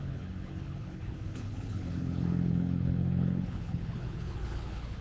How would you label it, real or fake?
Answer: fake